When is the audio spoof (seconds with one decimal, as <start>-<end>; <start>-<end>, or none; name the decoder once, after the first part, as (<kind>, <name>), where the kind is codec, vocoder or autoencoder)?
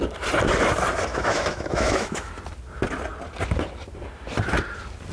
1.1-2.3 (autoencoder, DAC-VAE)